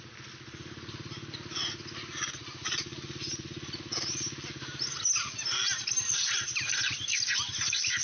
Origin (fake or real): real